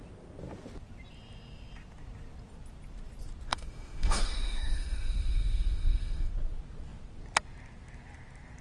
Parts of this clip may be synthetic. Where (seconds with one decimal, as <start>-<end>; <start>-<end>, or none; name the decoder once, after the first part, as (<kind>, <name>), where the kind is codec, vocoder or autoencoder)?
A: 3.5-6.3 (autoencoder, DAC-VAE)